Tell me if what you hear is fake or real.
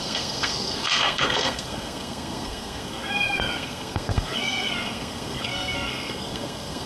fake